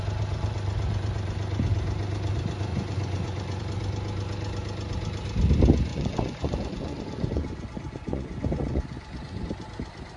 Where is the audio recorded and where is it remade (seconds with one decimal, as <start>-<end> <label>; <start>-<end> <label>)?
0.0-2.7 recorded; 2.7-3.6 remade; 3.6-5.9 recorded; 5.9-9.4 remade; 9.4-10.2 recorded